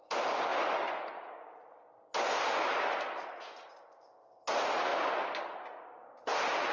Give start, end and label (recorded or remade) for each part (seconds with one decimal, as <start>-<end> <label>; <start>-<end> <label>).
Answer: 0.0-0.5 recorded; 0.5-3.7 remade; 3.7-4.9 recorded; 4.9-6.7 remade